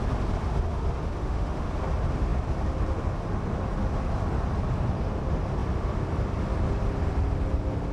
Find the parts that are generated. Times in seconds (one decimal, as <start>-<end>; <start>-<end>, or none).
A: 1.2-1.7